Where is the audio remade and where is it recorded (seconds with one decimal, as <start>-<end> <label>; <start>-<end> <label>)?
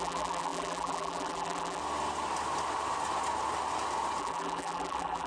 0.0-1.8 remade; 1.8-4.2 recorded; 4.2-5.3 remade